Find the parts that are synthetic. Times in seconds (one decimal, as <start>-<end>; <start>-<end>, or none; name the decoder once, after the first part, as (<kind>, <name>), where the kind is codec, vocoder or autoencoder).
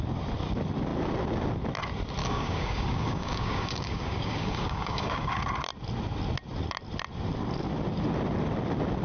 2.2-5.4 (codec, DAC)